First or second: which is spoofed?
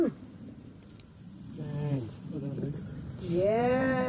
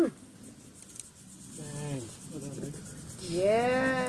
first